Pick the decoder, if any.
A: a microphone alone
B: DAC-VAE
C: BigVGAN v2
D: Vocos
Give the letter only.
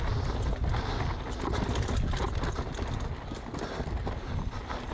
A